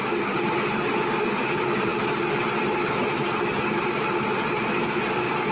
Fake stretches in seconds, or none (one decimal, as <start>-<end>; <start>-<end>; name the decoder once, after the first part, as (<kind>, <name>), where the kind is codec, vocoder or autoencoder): none